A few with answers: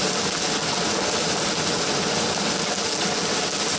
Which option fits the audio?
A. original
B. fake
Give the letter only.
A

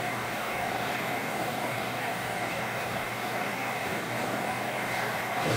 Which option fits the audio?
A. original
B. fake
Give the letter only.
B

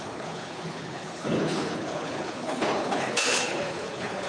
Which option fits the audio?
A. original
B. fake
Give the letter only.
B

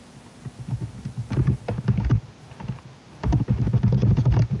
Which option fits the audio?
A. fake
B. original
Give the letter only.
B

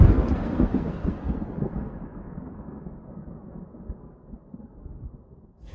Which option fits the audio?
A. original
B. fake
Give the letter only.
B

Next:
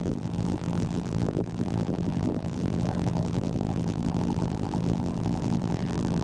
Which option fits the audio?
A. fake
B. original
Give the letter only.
A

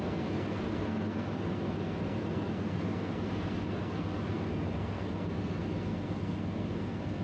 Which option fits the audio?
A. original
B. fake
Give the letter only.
B